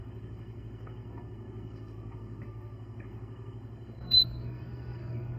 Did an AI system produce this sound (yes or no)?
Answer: yes